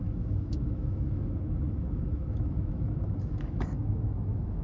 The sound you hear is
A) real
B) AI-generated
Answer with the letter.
B